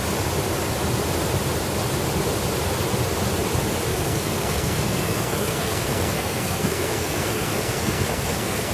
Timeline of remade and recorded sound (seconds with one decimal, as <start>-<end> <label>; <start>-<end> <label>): 0.0-3.9 recorded; 3.9-8.7 remade